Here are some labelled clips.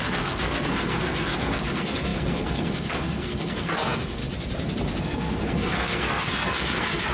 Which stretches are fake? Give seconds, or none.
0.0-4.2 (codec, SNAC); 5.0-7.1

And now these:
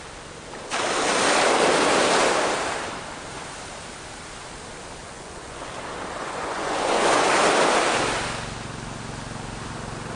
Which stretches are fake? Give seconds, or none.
5.0-5.7 (vocoder, Vocos); 6.2-7.3

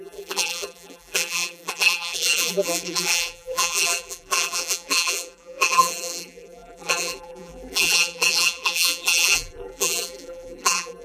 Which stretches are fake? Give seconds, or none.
0.0-11.0 (vocoder, BigVGAN v2)

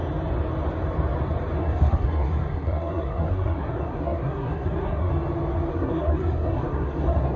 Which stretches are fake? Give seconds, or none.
1.6-5.1 (codec, SNAC); 5.7-7.4

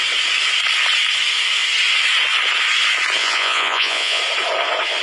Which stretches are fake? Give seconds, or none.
3.2-4.2 (vocoder, Vocos)

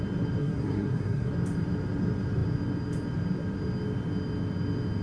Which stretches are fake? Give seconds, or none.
0.4-1.3 (codec, SNAC)